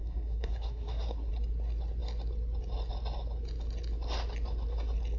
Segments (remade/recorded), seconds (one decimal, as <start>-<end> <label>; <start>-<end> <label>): 0.0-1.3 remade; 1.3-5.2 recorded